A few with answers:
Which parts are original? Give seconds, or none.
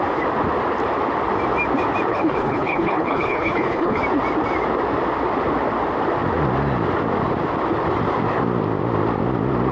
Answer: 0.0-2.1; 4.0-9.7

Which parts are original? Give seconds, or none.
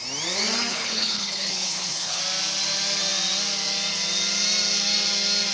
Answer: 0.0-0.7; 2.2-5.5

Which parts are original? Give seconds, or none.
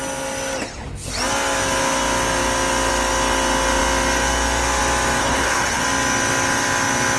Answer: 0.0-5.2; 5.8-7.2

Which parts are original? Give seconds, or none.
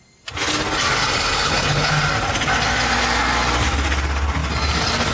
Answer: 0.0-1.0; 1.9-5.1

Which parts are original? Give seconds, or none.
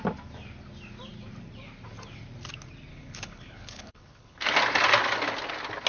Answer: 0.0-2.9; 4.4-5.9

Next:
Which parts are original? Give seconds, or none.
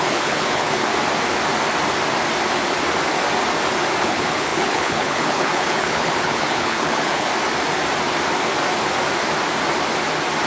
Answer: 0.9-4.0; 7.3-10.5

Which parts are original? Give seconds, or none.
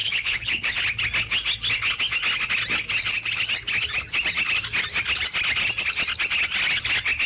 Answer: 0.8-7.3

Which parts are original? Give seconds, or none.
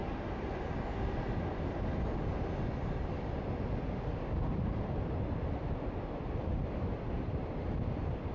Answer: 0.0-8.3